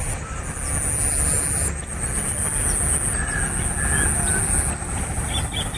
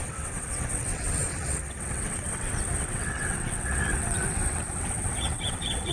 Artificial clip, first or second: second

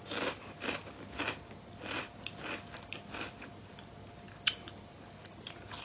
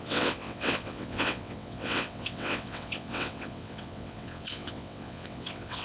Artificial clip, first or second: second